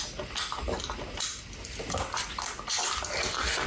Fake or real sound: real